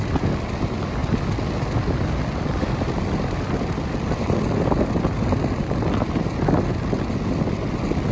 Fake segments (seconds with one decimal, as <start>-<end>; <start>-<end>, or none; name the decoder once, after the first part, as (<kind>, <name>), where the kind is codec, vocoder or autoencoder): none